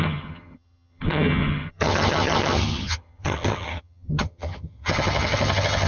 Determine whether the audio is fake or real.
fake